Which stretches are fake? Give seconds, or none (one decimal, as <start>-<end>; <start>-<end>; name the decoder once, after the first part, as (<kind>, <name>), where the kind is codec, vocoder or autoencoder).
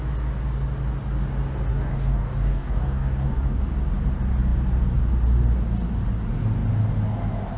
1.7-3.6 (codec, DAC)